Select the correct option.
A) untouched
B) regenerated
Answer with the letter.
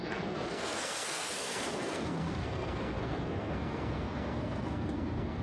B